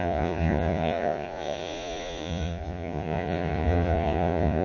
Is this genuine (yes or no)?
no